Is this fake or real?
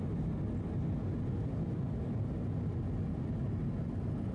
real